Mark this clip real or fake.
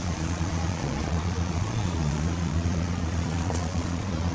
fake